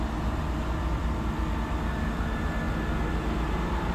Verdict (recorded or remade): recorded